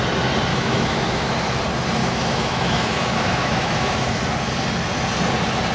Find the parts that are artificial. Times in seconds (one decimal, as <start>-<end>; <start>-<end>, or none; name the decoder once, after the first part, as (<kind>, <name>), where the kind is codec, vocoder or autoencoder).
0.5-1.3 (autoencoder, DAC-VAE); 2.0-4.2